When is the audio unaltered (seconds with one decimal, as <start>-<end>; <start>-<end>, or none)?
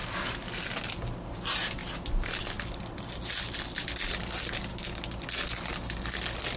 0.8-6.6